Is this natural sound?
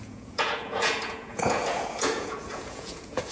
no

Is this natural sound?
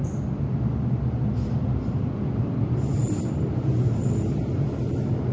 yes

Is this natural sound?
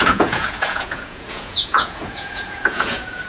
no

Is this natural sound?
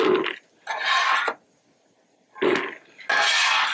yes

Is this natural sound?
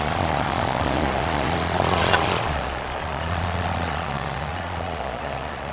no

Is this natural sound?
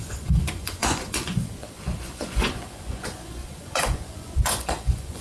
no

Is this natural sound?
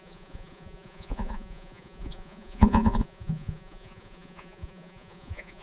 no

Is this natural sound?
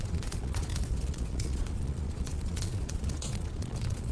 no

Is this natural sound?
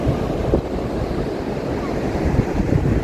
yes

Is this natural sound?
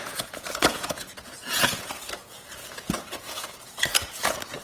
no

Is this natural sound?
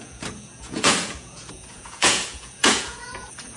no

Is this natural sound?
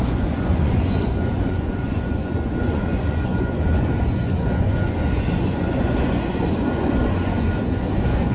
no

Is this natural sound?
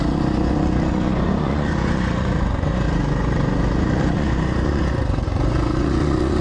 no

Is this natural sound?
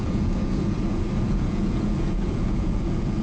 no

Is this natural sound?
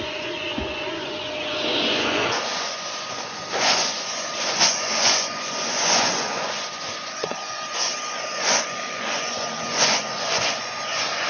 no